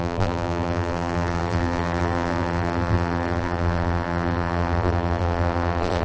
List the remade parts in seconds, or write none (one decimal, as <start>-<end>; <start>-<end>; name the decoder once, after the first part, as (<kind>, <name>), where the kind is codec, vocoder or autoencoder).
0.0-6.0 (vocoder, BigVGAN v2)